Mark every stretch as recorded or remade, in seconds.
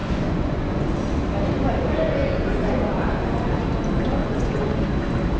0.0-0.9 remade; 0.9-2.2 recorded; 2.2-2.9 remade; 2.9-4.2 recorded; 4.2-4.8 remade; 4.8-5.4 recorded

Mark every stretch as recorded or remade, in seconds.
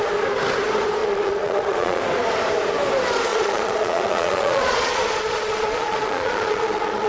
0.0-1.0 recorded; 1.0-2.0 remade; 2.0-3.3 recorded; 3.3-7.1 remade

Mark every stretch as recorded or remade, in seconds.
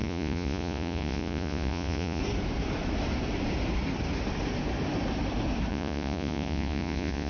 0.0-2.2 remade; 2.2-5.7 recorded; 5.7-7.3 remade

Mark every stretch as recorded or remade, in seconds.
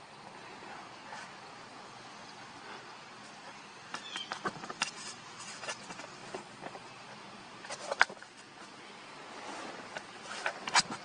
0.0-6.2 recorded; 6.2-8.4 remade; 8.4-11.0 recorded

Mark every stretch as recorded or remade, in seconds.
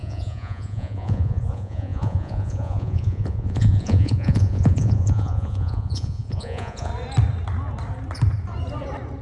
0.0-6.9 remade; 6.9-9.2 recorded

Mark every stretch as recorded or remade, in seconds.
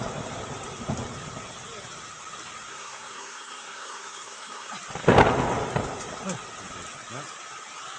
0.0-2.7 recorded; 2.7-4.7 remade; 4.7-8.0 recorded